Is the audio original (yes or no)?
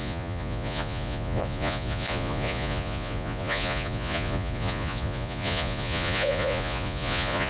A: no